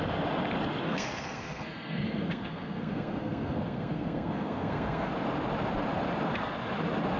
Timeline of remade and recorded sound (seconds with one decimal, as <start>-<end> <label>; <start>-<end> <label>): 0.0-0.8 recorded; 0.8-5.1 remade; 5.1-7.2 recorded